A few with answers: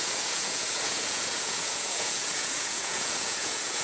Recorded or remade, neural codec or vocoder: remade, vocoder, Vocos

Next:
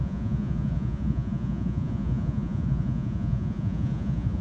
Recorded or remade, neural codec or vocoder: remade, vocoder, Vocos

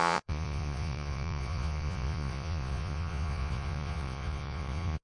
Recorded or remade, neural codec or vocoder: remade, vocoder, Vocos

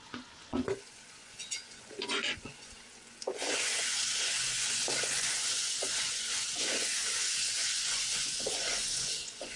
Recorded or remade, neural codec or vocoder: remade, vocoder, Vocos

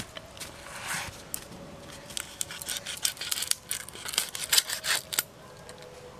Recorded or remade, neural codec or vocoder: recorded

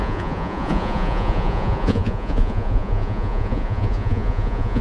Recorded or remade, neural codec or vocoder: remade, vocoder, Vocos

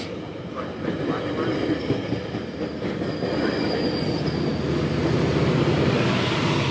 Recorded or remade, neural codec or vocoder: recorded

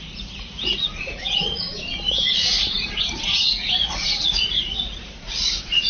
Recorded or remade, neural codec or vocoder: remade, vocoder, Vocos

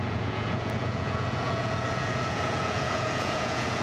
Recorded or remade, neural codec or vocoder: remade, vocoder, Vocos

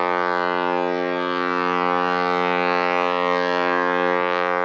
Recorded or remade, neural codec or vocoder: recorded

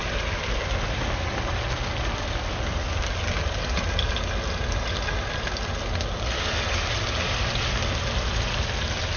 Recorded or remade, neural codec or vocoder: recorded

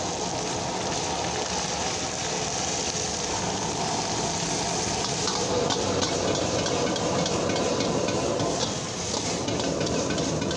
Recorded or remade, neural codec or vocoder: recorded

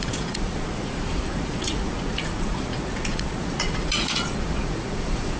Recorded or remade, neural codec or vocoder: remade, vocoder, Vocos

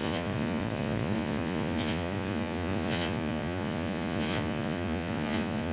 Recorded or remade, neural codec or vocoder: remade, vocoder, Vocos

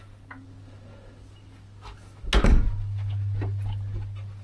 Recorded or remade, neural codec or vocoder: recorded